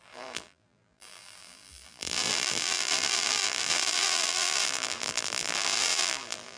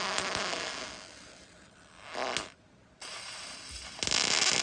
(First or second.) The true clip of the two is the second